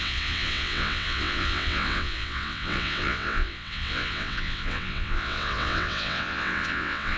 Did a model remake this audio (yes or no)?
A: yes